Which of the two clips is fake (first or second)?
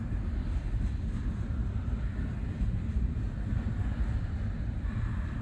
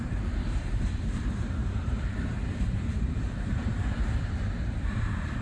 second